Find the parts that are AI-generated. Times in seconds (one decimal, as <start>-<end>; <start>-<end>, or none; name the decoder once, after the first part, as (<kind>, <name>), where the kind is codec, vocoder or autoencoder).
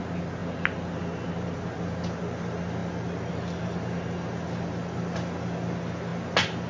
none